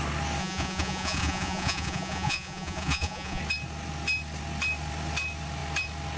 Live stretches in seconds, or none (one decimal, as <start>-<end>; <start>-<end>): 0.0-0.4; 3.4-6.2